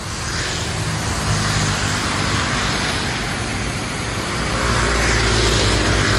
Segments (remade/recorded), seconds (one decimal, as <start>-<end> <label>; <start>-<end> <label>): 0.0-6.2 recorded

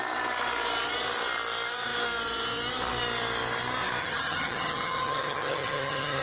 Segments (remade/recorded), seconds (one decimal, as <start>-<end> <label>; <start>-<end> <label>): 0.0-4.0 recorded; 4.0-6.2 remade

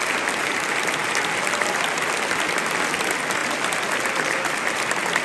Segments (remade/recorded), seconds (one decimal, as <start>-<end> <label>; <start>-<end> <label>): 0.0-5.2 recorded

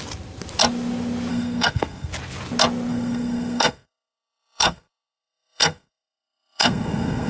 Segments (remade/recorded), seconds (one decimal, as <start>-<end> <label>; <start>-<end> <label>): 0.0-1.3 recorded; 1.3-2.1 remade; 2.1-2.9 recorded; 2.9-7.3 remade

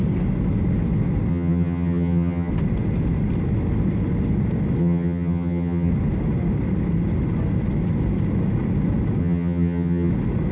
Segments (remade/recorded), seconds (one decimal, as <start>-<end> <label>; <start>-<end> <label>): 0.0-1.3 recorded; 1.3-2.5 remade; 2.5-4.8 recorded; 4.8-5.9 remade; 5.9-9.2 recorded; 9.2-10.1 remade; 10.1-10.5 recorded

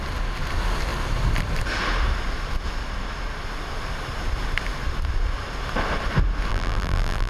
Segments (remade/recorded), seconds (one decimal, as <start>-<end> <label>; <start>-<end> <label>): 0.0-6.5 recorded; 6.5-7.3 remade

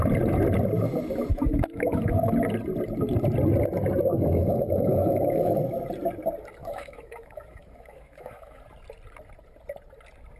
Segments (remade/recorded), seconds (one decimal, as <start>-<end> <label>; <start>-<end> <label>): 0.0-1.3 recorded; 1.3-2.3 remade; 2.3-4.1 recorded; 4.1-5.6 remade; 5.6-6.6 recorded; 6.6-8.6 remade; 8.6-10.4 recorded